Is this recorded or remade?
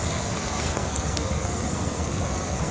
remade